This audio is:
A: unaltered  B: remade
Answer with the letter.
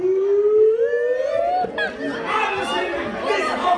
A